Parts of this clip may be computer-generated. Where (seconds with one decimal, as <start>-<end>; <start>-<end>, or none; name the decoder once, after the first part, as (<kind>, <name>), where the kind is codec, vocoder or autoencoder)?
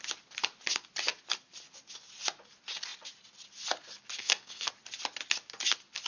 4.2-4.7 (codec, SNAC)